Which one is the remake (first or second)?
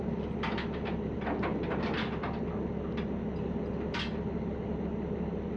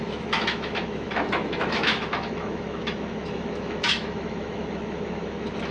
second